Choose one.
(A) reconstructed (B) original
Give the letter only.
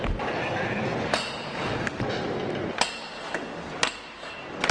B